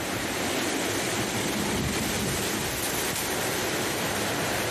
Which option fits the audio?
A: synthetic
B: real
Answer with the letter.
B